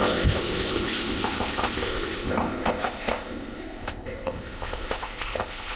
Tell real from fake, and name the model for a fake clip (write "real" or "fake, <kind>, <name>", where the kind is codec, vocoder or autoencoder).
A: fake, codec, ZipCodec